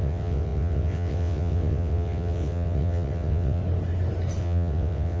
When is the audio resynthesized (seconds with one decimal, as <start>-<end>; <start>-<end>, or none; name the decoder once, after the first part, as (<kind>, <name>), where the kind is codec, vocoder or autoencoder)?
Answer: 0.0-3.6 (vocoder, WaveNeXt); 4.4-5.2